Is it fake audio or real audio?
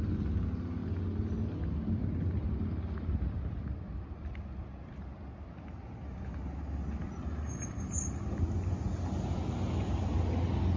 real